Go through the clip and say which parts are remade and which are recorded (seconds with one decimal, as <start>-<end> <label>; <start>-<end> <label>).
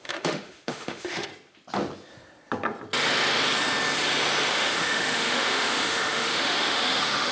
0.0-1.3 remade; 1.3-4.5 recorded; 4.5-7.3 remade